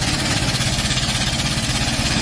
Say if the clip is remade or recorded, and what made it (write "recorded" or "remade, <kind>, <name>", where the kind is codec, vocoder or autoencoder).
remade, vocoder, Vocos